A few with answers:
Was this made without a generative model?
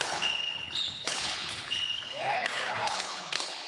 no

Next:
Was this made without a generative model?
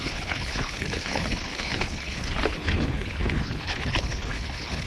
no